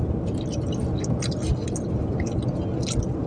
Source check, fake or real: real